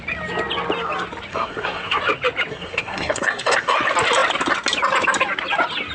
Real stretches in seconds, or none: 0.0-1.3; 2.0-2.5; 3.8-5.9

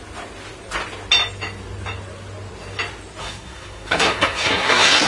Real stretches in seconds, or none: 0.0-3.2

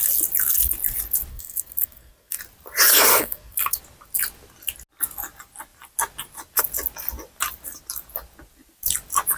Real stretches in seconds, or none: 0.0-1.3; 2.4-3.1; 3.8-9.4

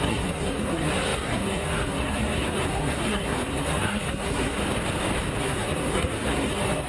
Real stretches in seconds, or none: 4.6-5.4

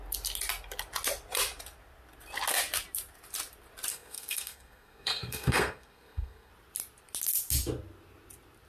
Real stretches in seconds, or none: 0.0-3.9; 6.5-8.7